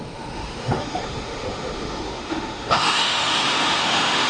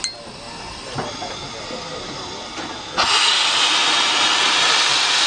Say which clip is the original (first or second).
second